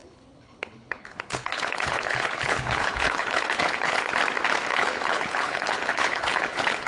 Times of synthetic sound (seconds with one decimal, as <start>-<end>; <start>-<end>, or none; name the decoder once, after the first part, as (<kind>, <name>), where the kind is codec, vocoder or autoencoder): 0.0-4.1 (codec, HILCodec); 4.7-6.9